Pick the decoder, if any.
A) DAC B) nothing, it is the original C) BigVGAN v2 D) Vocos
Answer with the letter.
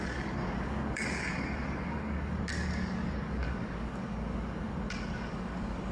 A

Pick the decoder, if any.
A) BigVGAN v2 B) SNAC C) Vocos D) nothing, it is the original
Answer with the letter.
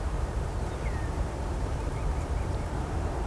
A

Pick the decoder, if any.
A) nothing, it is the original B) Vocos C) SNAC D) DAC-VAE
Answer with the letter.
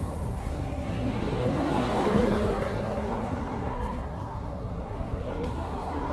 C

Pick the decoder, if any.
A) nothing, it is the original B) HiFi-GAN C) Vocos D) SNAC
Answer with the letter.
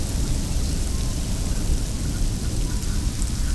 A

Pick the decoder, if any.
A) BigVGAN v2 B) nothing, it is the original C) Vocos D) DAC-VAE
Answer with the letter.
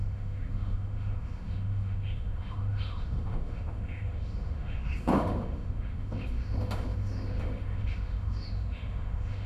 D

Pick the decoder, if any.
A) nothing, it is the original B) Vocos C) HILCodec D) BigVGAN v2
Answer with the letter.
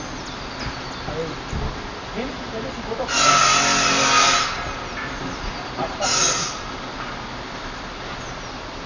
A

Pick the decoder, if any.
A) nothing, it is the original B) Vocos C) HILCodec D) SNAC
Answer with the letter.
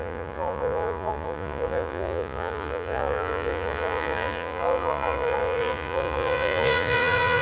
B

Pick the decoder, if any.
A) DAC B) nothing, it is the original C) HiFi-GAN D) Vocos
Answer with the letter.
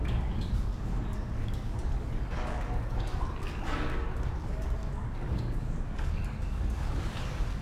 A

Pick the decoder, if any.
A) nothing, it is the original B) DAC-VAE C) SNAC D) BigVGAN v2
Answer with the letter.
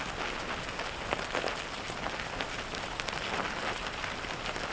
A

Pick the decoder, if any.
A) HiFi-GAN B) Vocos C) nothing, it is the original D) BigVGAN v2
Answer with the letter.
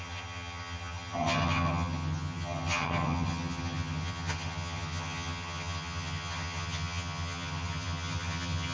A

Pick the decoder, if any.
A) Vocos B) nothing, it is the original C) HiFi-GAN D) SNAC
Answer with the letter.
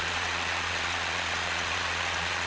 A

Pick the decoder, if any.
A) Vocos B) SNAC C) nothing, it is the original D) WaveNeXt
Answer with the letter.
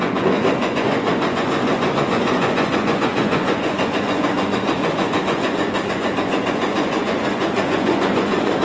A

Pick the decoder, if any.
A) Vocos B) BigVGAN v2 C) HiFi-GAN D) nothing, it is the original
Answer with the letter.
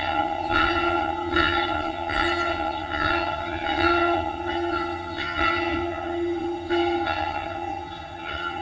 C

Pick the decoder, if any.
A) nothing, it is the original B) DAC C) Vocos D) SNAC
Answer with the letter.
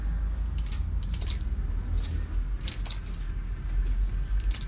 A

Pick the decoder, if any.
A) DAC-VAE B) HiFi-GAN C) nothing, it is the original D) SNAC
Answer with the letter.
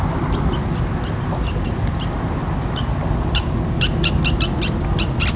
C